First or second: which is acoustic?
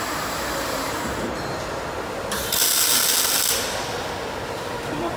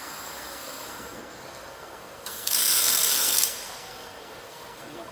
first